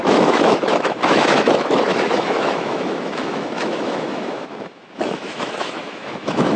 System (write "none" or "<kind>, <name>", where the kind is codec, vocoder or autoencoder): autoencoder, DAC-VAE